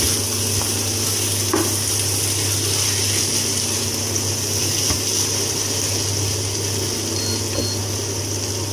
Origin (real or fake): real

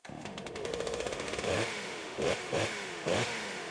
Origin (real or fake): fake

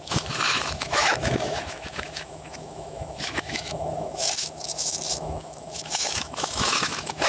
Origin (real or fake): fake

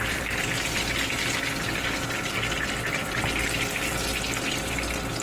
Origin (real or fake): real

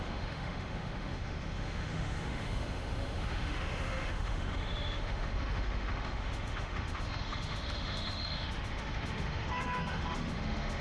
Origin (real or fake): fake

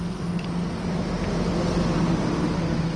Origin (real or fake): real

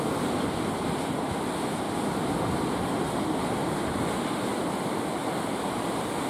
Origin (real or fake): real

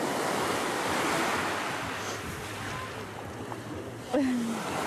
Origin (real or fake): real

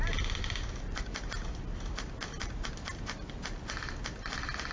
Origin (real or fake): real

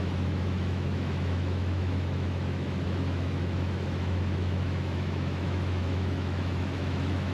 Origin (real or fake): fake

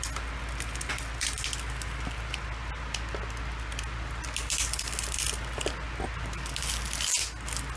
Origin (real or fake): real